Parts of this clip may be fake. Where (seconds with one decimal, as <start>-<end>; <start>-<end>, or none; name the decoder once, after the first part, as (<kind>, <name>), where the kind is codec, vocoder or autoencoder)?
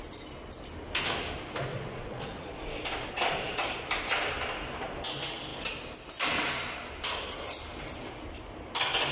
1.7-3.8 (vocoder, Vocos)